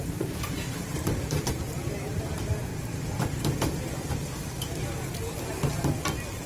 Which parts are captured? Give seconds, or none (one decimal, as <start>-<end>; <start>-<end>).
2.7-6.5